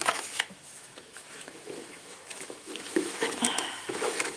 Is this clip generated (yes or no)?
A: yes